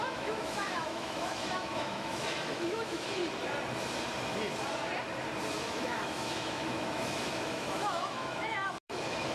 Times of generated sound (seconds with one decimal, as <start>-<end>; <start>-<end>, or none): 0.0-3.2; 5.5-9.3

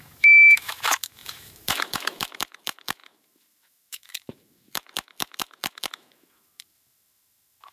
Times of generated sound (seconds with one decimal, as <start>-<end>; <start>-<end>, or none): 0.0-7.7

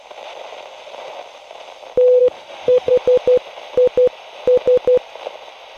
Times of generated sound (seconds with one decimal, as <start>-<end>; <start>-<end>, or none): 2.2-2.9